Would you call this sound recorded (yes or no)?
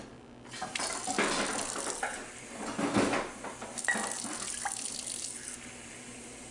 yes